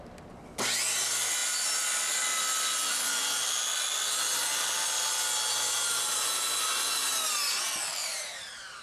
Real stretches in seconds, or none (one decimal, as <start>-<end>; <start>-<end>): 0.0-8.0